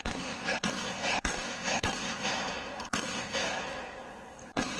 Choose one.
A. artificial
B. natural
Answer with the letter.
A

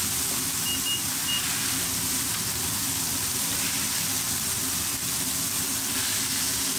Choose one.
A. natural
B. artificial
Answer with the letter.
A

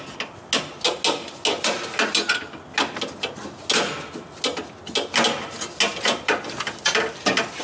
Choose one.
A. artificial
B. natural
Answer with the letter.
B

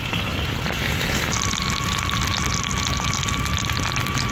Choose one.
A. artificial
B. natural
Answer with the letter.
B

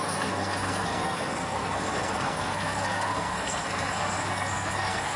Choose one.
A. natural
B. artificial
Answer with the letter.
B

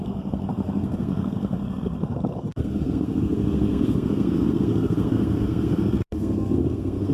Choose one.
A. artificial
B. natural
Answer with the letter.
A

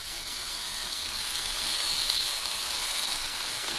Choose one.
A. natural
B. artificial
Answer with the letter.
B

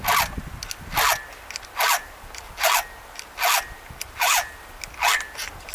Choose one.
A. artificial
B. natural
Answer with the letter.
B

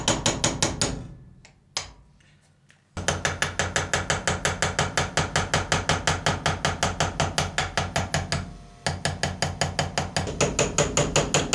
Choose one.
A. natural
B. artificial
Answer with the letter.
A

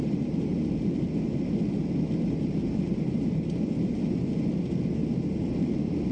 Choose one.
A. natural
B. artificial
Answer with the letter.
A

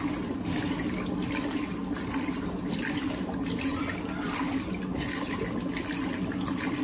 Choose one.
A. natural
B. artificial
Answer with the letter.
A